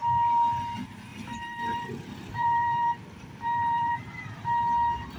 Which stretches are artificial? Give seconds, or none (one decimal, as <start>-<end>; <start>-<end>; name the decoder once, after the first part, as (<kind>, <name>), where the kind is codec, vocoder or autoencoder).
1.1-3.9 (vocoder, BigVGAN v2)